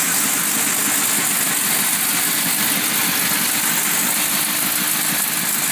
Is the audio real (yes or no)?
yes